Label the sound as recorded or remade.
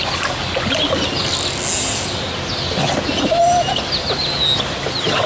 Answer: recorded